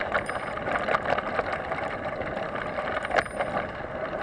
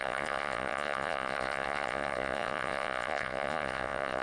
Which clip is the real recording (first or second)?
first